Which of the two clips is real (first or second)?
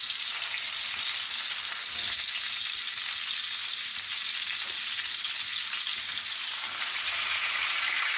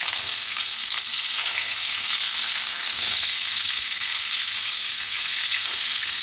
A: first